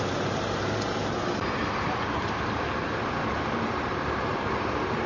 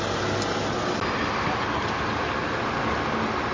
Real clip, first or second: second